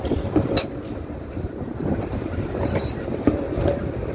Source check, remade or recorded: remade